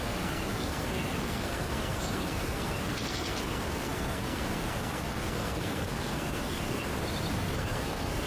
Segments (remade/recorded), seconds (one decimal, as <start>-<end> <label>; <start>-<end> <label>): 0.0-6.9 remade; 6.9-7.4 recorded; 7.4-8.3 remade

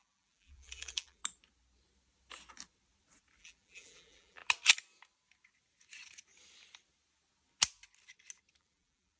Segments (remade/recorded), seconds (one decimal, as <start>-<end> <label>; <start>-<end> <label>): 0.0-1.2 remade; 1.2-3.4 recorded; 3.4-4.4 remade; 4.4-8.6 recorded; 8.6-9.2 remade

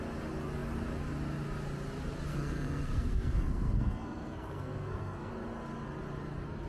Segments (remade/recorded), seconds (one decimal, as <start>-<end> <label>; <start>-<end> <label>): 0.0-2.3 recorded; 2.3-5.3 remade; 5.3-6.7 recorded

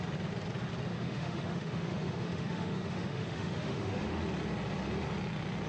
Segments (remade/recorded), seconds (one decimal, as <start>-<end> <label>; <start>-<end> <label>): 0.0-0.9 recorded; 0.9-4.2 remade; 4.2-5.7 recorded